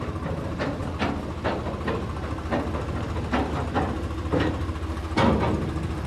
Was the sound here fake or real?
real